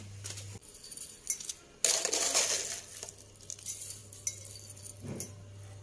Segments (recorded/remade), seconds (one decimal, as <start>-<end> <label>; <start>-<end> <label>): 0.0-5.8 recorded